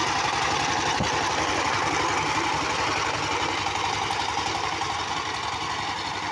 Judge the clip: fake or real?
real